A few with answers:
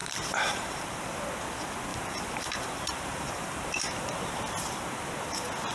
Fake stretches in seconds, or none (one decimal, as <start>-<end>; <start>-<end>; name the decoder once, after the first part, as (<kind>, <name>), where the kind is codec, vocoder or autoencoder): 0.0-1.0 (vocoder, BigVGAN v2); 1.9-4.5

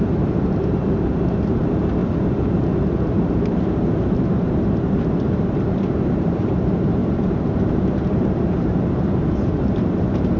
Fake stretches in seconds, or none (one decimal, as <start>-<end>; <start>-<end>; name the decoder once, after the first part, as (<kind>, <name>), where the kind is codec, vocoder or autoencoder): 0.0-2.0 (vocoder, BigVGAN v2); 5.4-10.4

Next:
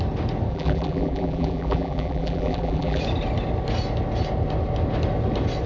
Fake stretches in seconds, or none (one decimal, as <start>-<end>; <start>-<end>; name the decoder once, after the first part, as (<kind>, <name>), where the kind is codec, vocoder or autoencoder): 0.5-3.0 (vocoder, BigVGAN v2)

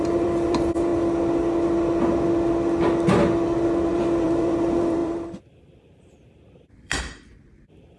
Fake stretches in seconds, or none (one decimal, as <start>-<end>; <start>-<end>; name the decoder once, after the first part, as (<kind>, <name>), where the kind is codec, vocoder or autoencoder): 0.0-0.9 (vocoder, BigVGAN v2); 3.9-8.0

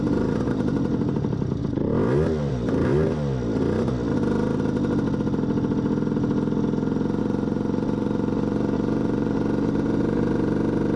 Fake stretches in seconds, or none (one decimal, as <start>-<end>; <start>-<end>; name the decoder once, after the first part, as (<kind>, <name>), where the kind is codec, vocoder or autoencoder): 0.0-1.6 (vocoder, BigVGAN v2); 2.5-2.9; 7.2-11.0

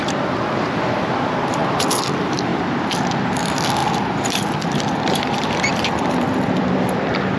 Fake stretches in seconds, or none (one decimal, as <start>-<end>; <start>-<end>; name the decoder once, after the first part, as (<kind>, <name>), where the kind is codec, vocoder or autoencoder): 0.0-1.6 (vocoder, BigVGAN v2); 2.1-2.5; 3.1-7.4